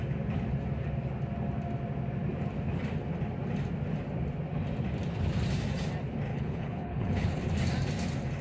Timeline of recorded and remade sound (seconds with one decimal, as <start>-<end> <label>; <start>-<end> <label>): 0.0-6.3 recorded; 6.3-7.4 remade; 7.4-8.4 recorded